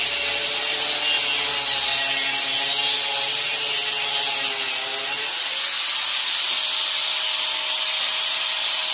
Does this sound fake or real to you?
real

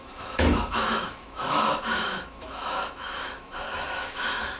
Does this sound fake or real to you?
fake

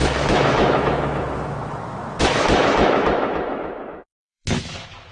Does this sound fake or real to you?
fake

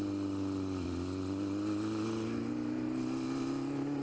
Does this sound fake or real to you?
real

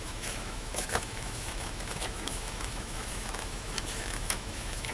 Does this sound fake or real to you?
fake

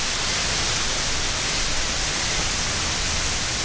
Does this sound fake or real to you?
real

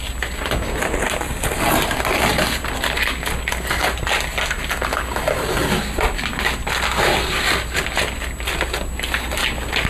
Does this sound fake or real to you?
real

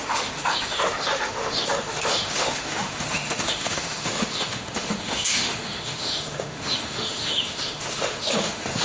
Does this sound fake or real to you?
fake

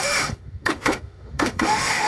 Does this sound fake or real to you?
fake